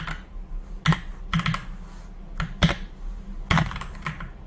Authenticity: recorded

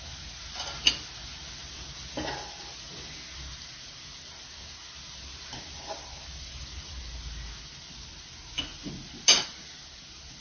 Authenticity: recorded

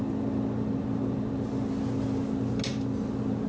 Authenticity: recorded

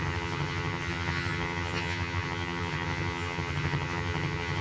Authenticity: remade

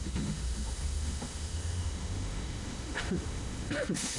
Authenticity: remade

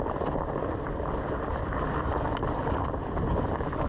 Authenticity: recorded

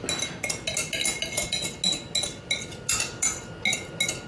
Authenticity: recorded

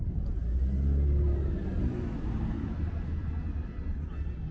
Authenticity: recorded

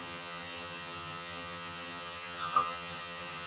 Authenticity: remade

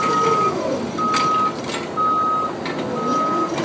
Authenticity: recorded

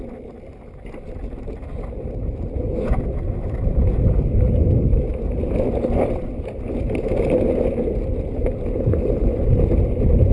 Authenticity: recorded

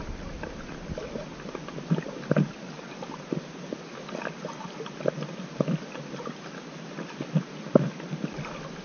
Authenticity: recorded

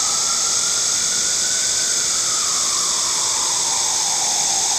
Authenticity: remade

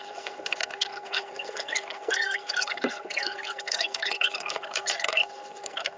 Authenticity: remade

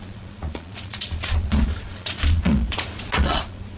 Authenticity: remade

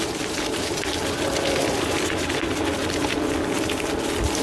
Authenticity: recorded